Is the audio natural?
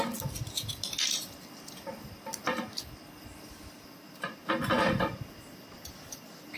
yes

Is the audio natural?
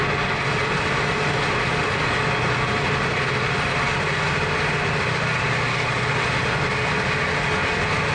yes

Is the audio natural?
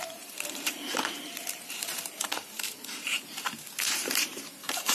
no